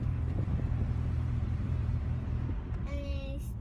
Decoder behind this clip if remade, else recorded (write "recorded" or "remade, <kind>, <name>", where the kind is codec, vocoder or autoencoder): remade, vocoder, BigVGAN v2